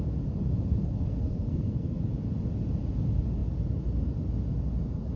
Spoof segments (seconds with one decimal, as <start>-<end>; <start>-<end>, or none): 0.8-2.0